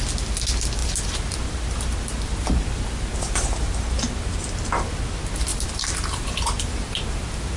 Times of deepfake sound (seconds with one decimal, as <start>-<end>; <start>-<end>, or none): 0.8-3.8; 5.5-6.7